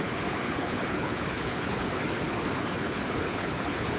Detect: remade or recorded remade